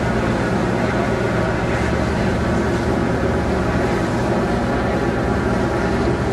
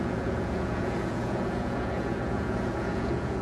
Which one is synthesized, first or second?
second